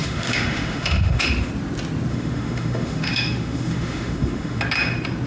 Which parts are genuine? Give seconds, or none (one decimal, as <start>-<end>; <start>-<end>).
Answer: 1.5-2.1; 4.6-5.3

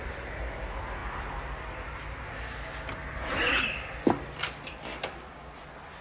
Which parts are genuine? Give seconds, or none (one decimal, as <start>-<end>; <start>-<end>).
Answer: 0.0-3.4; 5.3-6.0